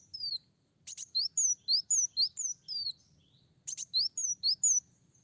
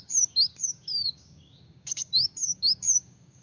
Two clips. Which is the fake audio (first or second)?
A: second